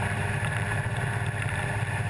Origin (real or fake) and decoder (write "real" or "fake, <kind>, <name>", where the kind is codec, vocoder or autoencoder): fake, vocoder, BigVGAN v2